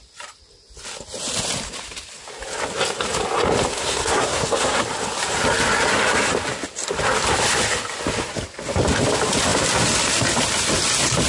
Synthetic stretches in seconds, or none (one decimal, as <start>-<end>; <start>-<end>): 3.7-4.8

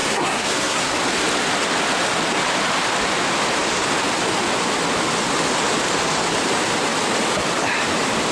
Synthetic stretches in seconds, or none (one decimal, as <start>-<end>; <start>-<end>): 0.0-1.0

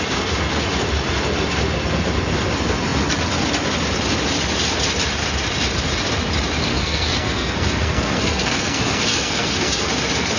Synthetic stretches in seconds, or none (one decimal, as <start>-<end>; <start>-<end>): 6.7-9.9

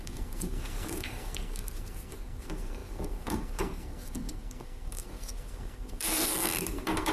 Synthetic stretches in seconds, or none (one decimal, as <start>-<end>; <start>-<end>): 0.0-7.1

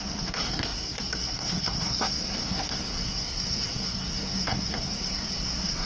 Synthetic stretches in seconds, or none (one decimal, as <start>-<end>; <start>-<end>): 0.0-5.9

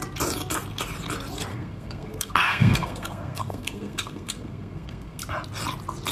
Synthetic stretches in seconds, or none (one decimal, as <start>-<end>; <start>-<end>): 1.5-5.2

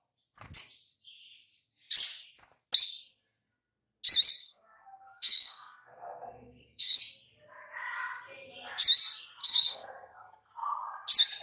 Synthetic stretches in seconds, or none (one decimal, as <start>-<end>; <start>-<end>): 4.4-7.0; 9.4-10.5